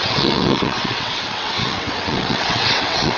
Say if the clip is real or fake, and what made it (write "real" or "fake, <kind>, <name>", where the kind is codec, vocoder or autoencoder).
fake, vocoder, WaveNeXt